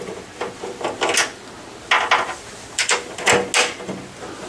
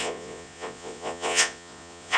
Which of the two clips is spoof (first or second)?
second